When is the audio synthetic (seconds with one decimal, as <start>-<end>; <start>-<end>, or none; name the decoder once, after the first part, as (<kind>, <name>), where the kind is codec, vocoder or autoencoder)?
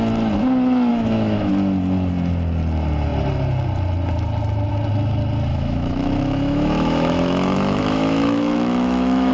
0.9-1.5 (autoencoder, DAC-VAE); 5.5-9.3